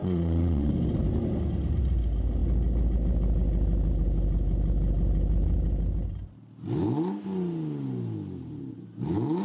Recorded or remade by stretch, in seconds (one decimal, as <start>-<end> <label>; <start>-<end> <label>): 0.0-0.7 remade; 0.7-9.4 recorded